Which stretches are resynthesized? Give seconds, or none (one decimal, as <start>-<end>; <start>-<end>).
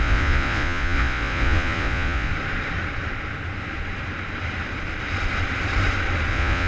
0.0-2.3; 6.3-6.7